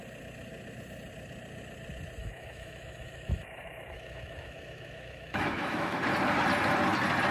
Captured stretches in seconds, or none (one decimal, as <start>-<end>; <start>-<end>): 0.0-2.2; 6.0-7.3